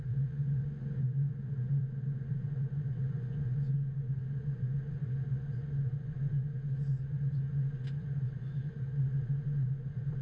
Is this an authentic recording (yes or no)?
no